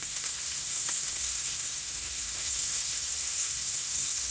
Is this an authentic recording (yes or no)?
no